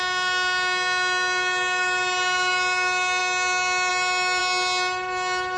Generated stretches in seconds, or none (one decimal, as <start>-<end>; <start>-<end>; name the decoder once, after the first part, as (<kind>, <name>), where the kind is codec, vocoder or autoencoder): none